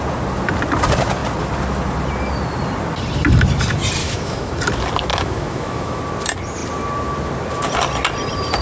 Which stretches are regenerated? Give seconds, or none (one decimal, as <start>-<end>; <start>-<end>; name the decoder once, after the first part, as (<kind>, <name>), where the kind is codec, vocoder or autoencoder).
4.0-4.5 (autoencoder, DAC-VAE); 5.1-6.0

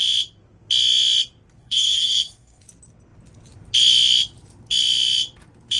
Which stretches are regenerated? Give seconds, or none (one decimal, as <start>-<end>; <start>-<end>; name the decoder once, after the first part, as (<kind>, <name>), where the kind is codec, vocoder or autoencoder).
1.6-2.6 (codec, SNAC)

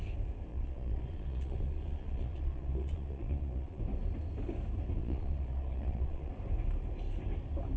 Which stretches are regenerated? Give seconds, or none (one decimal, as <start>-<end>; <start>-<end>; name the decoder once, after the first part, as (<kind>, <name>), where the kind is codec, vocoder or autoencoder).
0.5-3.8 (vocoder, Vocos); 5.0-6.3

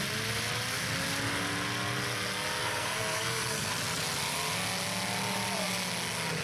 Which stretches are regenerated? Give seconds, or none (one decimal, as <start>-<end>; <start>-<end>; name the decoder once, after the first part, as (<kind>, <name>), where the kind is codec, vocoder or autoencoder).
2.6-3.7 (codec, SNAC)

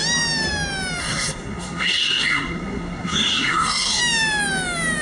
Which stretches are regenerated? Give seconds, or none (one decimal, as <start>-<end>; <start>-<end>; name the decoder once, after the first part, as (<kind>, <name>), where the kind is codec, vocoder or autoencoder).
1.0-4.0 (codec, SNAC)

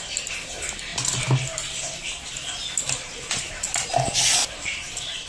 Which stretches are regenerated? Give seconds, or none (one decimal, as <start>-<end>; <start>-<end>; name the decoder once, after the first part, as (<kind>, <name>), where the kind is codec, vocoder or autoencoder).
0.9-2.3 (vocoder, BigVGAN v2); 4.4-5.3